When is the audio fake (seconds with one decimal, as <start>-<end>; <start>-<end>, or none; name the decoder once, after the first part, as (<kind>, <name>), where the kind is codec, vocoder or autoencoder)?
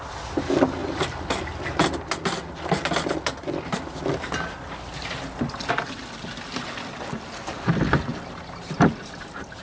none